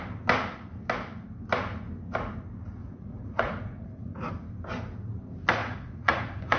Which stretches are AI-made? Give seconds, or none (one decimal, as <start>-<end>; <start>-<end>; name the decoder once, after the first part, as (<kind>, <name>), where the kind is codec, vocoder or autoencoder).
2.8-4.3 (vocoder, Vocos); 5.6-6.6